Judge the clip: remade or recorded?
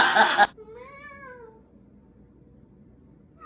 remade